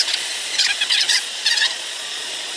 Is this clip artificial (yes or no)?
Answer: yes